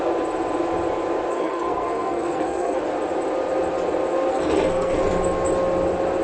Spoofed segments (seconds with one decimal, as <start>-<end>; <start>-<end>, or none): 1.3-2.8; 4.3-5.0